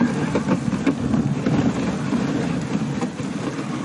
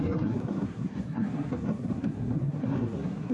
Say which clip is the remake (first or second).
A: second